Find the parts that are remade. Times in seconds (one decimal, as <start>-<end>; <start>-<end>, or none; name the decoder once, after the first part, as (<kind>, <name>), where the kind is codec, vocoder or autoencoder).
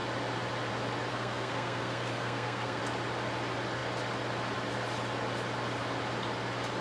1.1-2.8 (codec, SNAC)